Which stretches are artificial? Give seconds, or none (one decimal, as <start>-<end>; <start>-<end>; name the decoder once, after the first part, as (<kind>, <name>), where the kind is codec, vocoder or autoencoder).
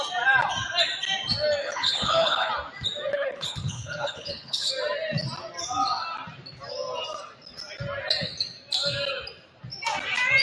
1.6-2.5 (codec, HILCodec); 3.1-4.7